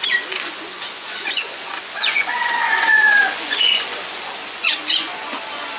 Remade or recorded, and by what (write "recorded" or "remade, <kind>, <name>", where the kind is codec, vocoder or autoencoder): remade, vocoder, Vocos